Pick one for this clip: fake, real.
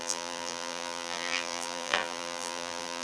fake